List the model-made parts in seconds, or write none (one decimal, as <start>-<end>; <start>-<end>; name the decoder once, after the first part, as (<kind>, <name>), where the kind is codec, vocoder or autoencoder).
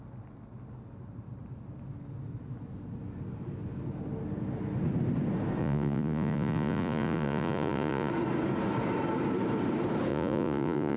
5.6-8.1 (vocoder, Vocos); 10.1-11.0